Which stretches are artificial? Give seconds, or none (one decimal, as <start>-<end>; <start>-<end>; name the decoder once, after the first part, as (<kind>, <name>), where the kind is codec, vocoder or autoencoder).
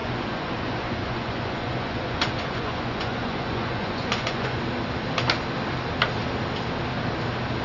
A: 0.0-4.6 (vocoder, Vocos)